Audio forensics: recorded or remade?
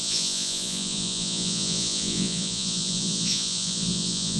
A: remade